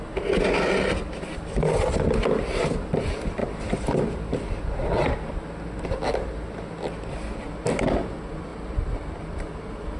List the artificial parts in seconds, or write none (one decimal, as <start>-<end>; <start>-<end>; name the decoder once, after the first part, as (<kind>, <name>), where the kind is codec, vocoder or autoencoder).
none